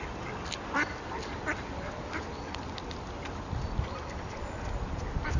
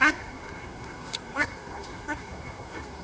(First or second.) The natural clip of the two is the first